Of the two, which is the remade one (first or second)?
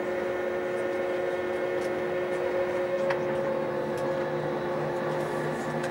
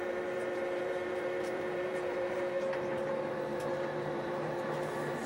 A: second